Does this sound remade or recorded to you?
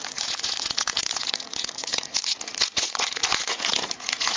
remade